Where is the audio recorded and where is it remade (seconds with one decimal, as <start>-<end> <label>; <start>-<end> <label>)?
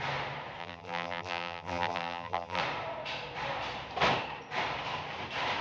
0.0-0.6 recorded; 0.6-2.6 remade; 2.6-5.6 recorded